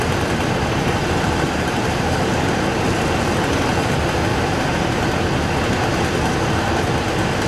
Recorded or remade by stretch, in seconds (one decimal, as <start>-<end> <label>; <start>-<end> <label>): 0.0-1.0 recorded; 1.0-2.3 remade; 2.3-4.3 recorded; 4.3-4.8 remade; 4.8-7.5 recorded